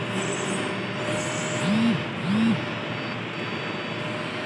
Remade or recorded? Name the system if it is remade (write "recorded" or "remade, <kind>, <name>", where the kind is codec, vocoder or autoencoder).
recorded